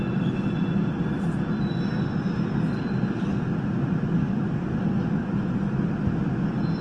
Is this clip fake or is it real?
real